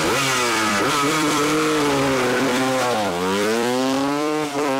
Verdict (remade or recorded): remade